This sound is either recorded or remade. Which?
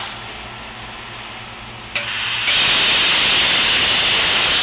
recorded